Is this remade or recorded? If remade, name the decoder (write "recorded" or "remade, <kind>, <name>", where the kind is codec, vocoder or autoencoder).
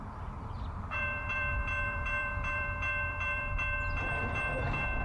remade, vocoder, BigVGAN v2